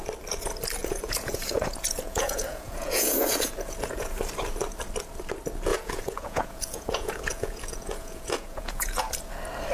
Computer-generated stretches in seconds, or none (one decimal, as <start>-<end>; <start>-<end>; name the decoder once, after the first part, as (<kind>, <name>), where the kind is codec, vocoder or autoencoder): 0.8-4.2 (vocoder, Vocos); 5.7-9.1